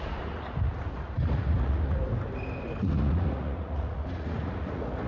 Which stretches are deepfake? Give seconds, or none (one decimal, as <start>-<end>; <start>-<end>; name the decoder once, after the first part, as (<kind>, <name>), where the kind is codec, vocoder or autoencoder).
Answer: 0.0-2.0 (vocoder, Vocos); 2.8-5.1